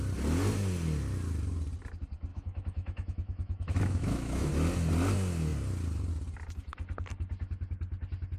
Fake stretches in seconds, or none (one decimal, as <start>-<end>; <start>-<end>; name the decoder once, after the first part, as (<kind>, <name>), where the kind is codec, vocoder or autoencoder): 2.3-4.5 (autoencoder, DAC-VAE)

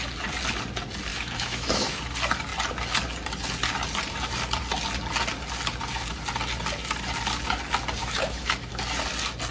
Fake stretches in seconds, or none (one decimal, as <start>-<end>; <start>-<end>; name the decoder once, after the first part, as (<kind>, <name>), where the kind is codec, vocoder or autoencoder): 1.1-2.0 (autoencoder, DAC-VAE); 8.0-8.7

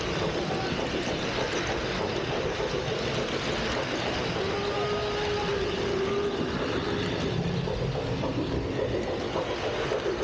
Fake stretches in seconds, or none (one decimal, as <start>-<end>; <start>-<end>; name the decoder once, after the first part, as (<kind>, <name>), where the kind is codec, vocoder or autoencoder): none